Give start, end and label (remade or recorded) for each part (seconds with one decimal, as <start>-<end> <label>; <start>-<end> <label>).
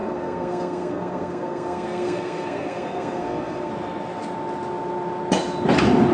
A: 0.0-3.7 remade; 3.7-6.1 recorded